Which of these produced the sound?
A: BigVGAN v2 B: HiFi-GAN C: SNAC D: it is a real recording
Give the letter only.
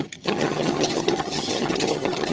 B